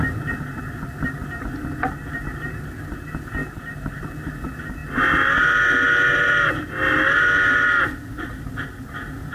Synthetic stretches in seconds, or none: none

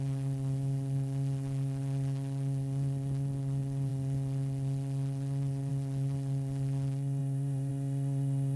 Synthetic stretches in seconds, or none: 7.2-7.7 (vocoder, BigVGAN v2)

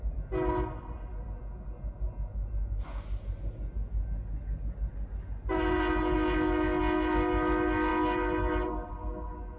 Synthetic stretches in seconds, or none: none

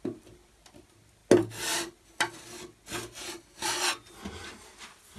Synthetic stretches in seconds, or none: 0.0-1.2 (vocoder, BigVGAN v2); 4.3-5.2

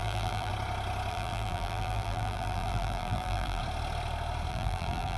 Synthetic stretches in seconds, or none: 0.0-0.5 (vocoder, BigVGAN v2); 1.1-3.6; 4.5-5.2

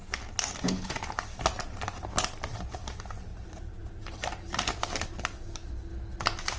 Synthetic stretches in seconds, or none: 3.3-5.2 (vocoder, BigVGAN v2)

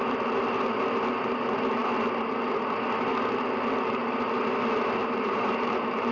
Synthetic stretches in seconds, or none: 5.0-6.1 (vocoder, BigVGAN v2)